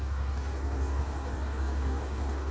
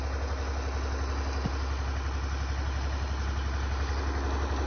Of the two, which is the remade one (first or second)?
first